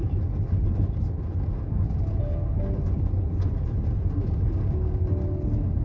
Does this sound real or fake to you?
real